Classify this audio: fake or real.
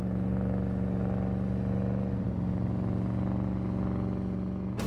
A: real